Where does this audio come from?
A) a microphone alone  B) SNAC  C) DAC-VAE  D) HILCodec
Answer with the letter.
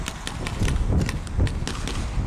A